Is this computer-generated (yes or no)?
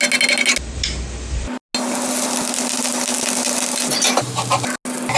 no